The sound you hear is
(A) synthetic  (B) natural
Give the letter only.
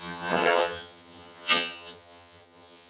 A